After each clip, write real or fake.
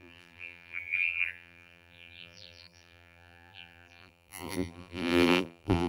fake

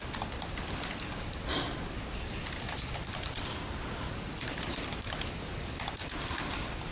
fake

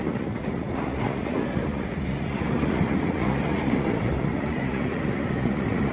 fake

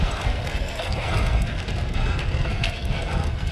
fake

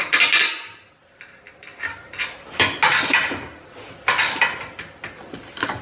real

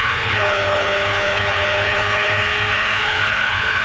fake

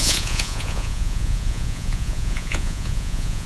fake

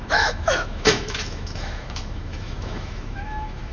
fake